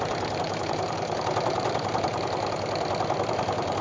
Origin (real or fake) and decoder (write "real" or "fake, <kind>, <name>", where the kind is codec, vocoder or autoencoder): fake, vocoder, BigVGAN v2